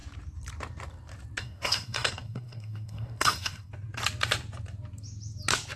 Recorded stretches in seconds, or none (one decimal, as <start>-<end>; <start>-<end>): 0.0-1.4; 3.7-5.8